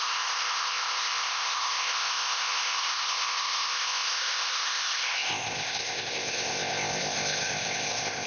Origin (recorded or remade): remade